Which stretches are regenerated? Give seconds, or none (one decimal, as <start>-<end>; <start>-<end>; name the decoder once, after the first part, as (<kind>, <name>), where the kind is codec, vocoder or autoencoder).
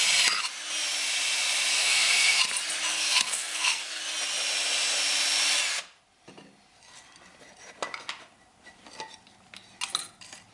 1.7-2.4 (codec, SNAC); 2.9-4.0